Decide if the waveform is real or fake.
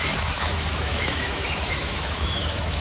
fake